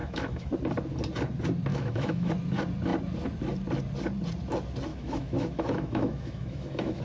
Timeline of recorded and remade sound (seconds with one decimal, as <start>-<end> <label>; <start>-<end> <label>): 0.0-0.5 remade; 0.5-1.7 recorded; 1.7-2.3 remade; 2.3-4.9 recorded; 4.9-7.0 remade